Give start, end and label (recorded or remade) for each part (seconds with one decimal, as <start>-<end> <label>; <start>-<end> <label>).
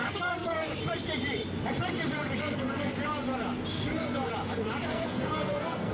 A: 0.0-0.7 remade; 0.7-2.4 recorded; 2.4-2.9 remade; 2.9-3.7 recorded; 3.7-4.3 remade; 4.3-4.9 recorded; 4.9-5.9 remade